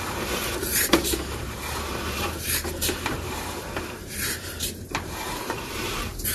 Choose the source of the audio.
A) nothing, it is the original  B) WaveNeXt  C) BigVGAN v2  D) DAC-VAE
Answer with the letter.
C